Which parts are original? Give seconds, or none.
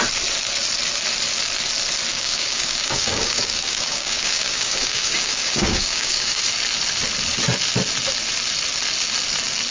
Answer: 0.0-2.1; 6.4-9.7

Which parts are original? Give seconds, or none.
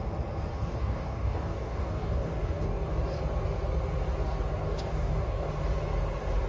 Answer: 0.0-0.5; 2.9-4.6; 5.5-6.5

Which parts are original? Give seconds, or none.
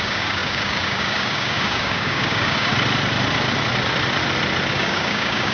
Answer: 2.7-4.7